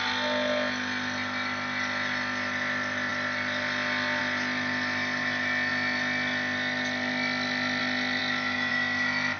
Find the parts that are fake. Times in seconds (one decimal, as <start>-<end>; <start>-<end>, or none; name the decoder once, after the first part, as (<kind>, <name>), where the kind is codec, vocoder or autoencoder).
none

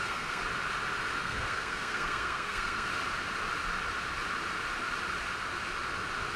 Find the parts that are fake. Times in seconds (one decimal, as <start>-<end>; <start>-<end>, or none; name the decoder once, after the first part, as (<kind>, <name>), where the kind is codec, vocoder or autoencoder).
0.0-0.4 (codec, SNAC); 1.2-2.9

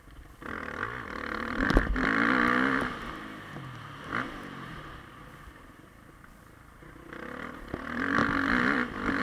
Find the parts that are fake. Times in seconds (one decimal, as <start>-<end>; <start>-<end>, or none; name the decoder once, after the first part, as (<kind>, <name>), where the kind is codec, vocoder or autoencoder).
none

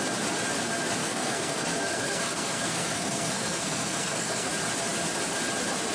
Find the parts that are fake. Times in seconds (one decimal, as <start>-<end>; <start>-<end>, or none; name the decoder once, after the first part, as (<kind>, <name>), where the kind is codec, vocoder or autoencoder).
1.0-4.5 (codec, SNAC)

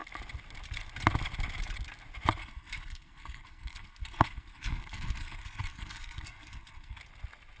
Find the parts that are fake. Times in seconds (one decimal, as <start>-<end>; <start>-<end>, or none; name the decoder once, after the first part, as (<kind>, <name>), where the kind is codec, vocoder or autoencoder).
2.4-7.0 (codec, SNAC)

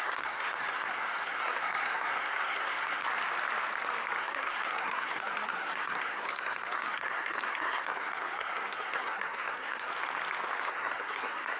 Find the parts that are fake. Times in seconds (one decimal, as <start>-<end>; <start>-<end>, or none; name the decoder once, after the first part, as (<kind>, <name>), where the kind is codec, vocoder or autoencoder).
0.0-3.1 (codec, SNAC); 4.2-9.9; 10.7-11.6

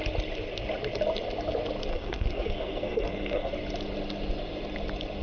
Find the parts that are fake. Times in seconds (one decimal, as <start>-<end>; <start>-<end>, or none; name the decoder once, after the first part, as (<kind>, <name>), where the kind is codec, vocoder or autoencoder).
1.9-3.5 (codec, SNAC)